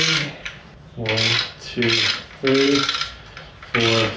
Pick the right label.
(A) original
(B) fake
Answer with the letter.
A